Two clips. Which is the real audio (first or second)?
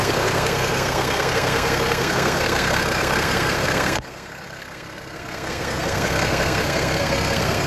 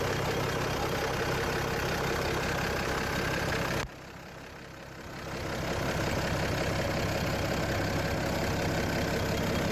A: second